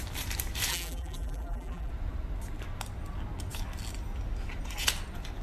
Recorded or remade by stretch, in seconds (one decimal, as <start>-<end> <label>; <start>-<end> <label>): 0.0-0.7 recorded; 0.7-1.9 remade; 1.9-5.4 recorded